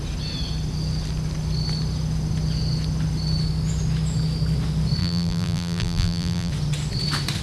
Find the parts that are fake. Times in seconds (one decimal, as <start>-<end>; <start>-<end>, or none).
5.0-6.5